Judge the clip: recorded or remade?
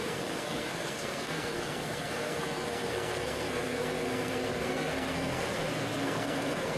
remade